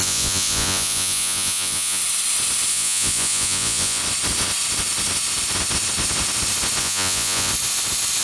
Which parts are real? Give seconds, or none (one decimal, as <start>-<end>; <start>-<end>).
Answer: 2.0-2.7; 4.0-6.8; 7.5-8.2